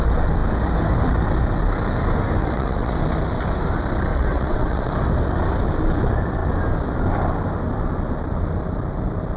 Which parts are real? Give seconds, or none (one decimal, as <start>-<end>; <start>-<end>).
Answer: 0.0-2.4; 3.0-4.1; 4.9-9.4